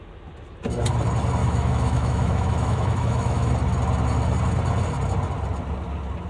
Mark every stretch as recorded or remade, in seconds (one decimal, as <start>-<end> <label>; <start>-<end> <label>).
0.0-1.4 recorded; 1.4-3.5 remade; 3.5-6.3 recorded